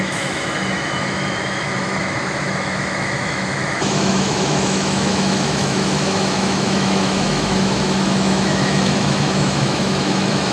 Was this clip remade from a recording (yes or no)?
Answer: yes